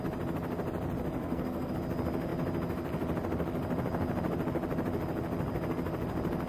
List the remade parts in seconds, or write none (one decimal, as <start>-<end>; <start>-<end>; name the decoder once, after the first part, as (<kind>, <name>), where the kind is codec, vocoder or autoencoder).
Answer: 1.2-1.7 (codec, SNAC)